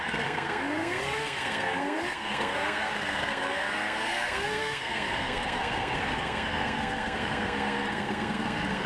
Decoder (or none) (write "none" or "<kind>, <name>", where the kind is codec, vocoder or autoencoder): codec, SNAC